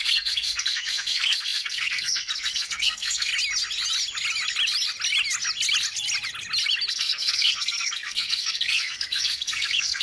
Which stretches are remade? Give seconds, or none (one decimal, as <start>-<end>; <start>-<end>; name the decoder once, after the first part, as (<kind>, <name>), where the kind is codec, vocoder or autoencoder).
0.0-3.3 (codec, SNAC); 6.9-10.0